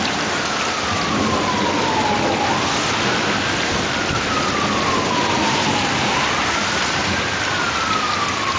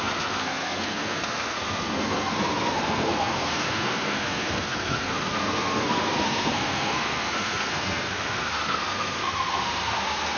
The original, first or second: first